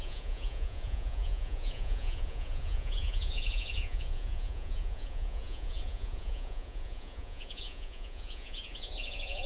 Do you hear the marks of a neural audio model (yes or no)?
yes